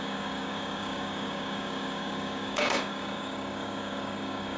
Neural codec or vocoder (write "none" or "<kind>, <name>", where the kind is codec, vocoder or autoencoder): codec, DAC